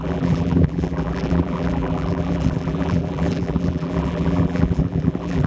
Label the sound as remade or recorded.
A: remade